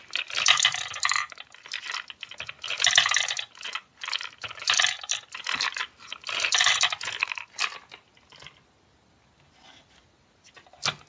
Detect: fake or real real